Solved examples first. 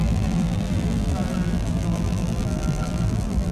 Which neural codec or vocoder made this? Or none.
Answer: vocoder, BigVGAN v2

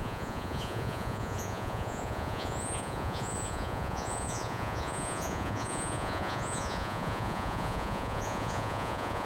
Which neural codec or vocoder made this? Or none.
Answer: vocoder, Vocos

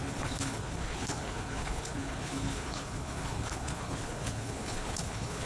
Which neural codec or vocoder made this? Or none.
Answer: codec, HILCodec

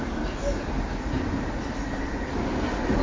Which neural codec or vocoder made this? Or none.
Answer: none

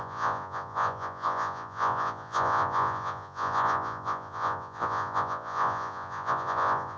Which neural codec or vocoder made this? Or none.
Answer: vocoder, Vocos